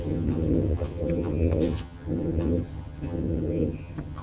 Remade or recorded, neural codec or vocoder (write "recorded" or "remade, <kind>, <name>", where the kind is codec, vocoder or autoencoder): remade, vocoder, HiFi-GAN